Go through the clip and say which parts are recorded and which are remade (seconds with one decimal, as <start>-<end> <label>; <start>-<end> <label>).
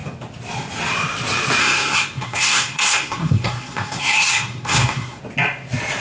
0.0-1.6 recorded; 1.6-5.2 remade; 5.2-6.0 recorded